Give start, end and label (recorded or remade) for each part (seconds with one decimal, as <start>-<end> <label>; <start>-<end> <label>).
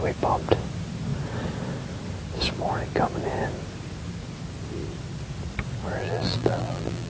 0.0-6.0 recorded; 6.0-7.1 remade